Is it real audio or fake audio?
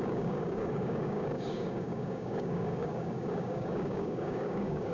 fake